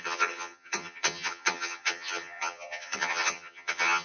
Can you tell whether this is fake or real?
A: fake